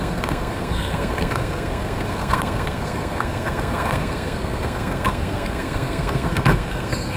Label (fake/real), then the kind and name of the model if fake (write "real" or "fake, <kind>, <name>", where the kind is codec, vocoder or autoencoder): fake, codec, SNAC